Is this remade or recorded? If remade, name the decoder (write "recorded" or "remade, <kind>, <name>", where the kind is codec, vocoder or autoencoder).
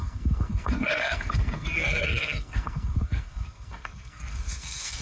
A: remade, codec, SNAC